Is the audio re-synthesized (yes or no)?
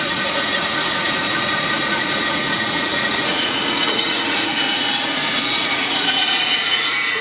yes